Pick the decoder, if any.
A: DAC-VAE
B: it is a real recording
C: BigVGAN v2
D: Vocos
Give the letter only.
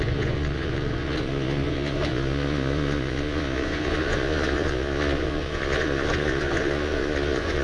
D